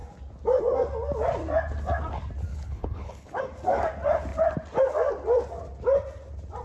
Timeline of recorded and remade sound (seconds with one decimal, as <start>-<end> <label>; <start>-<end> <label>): 0.0-2.5 recorded; 2.5-3.4 remade; 3.4-6.6 recorded